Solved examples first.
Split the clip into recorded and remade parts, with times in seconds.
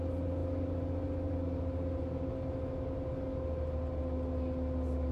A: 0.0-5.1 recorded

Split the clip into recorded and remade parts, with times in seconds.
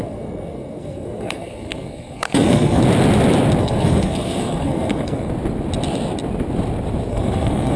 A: 0.0-2.8 remade; 2.8-3.6 recorded; 3.6-5.3 remade; 5.3-7.1 recorded; 7.1-7.8 remade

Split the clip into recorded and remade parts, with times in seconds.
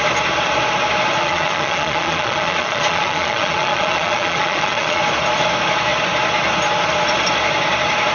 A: 0.0-1.2 recorded; 1.2-5.0 remade; 5.0-8.1 recorded